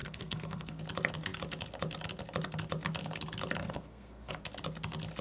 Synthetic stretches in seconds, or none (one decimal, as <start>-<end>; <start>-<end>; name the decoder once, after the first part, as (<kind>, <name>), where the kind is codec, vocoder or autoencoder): 0.0-0.8 (codec, SNAC); 3.6-4.3